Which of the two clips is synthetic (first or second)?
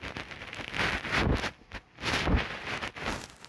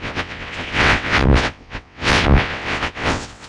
second